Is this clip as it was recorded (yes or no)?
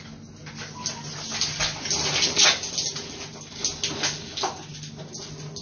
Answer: yes